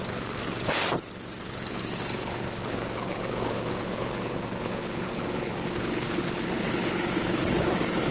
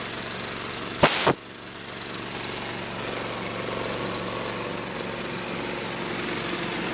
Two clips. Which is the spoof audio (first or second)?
first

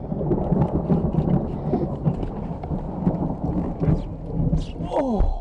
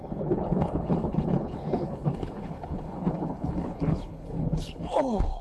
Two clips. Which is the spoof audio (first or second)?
second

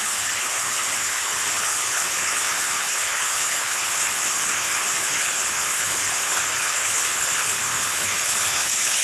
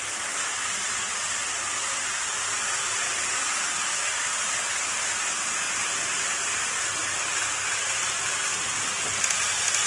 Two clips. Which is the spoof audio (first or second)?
first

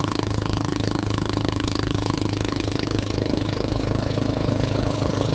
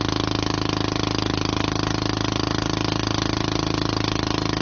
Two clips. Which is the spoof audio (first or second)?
first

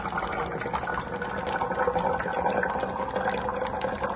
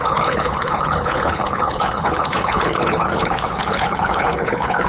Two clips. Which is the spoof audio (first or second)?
second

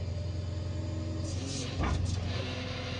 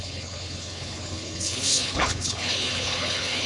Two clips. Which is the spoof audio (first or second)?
second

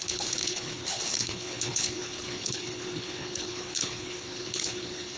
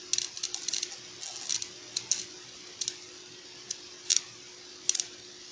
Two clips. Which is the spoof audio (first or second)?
first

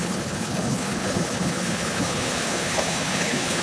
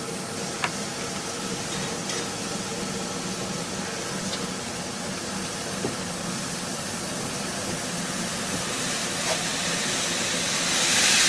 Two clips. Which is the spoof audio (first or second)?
first